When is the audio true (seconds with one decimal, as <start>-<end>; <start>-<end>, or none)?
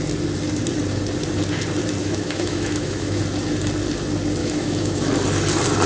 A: 0.0-2.0; 3.2-4.4; 5.1-5.9